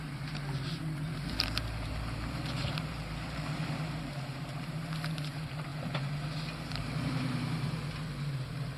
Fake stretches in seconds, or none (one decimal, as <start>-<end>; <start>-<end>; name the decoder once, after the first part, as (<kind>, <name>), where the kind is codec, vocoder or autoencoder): 0.0-5.7 (vocoder, BigVGAN v2); 6.7-8.8